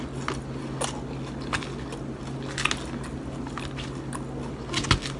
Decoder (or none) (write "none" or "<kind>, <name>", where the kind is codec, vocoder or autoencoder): none